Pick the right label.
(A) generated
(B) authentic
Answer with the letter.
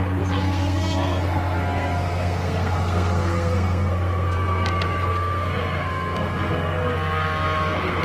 A